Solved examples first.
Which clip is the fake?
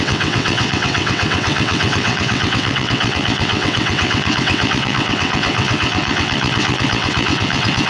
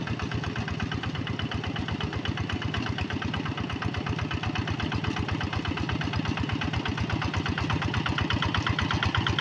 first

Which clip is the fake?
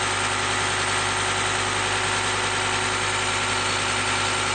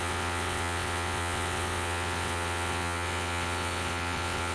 second